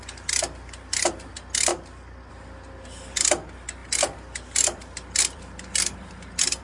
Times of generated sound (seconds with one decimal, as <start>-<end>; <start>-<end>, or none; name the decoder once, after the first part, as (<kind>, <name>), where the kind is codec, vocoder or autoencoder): 3.8-6.1 (vocoder, BigVGAN v2)